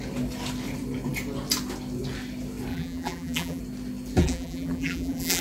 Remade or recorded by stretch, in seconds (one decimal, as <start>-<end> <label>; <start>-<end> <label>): 0.0-2.7 recorded; 2.7-3.6 remade; 3.6-4.2 recorded; 4.2-5.4 remade